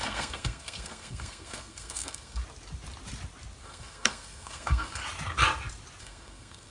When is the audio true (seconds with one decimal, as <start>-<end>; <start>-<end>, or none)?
2.4-3.6; 5.0-6.0